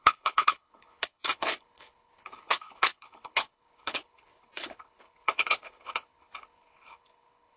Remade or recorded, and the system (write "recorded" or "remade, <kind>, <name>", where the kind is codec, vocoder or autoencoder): remade, codec, HILCodec